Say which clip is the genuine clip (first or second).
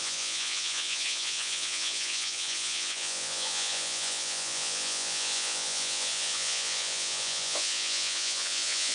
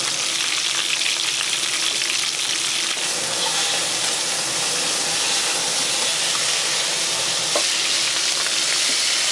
second